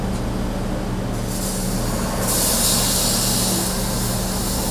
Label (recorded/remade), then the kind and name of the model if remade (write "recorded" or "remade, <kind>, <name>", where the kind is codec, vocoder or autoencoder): recorded